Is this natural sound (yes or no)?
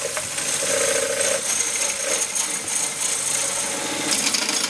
yes